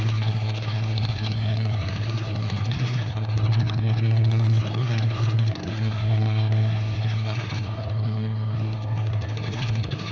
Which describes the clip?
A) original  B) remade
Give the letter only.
B